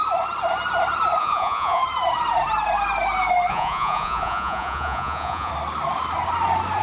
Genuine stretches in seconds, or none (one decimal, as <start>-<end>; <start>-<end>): 0.0-1.2; 1.8-3.5; 5.5-6.8

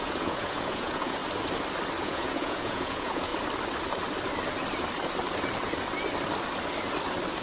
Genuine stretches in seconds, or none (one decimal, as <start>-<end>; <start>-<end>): 1.2-2.0; 3.3-7.4

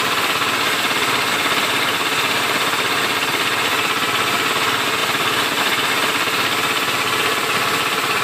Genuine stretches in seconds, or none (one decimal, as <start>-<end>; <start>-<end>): 0.0-8.2

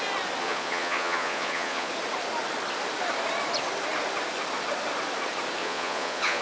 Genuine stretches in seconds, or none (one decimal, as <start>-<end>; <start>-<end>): 0.0-0.4; 1.9-5.6

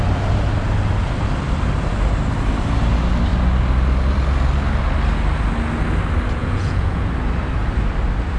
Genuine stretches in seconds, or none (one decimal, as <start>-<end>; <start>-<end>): 0.0-6.4; 7.1-8.4